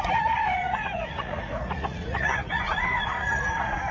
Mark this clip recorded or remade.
remade